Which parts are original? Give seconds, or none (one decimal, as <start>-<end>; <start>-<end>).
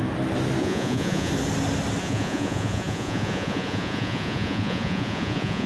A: 0.0-0.6; 1.3-2.0